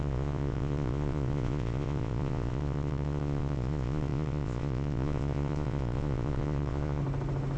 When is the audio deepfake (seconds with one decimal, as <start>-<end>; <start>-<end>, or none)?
0.0-7.0